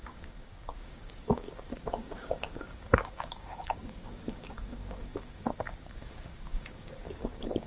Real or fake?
fake